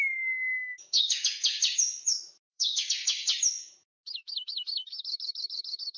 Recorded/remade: remade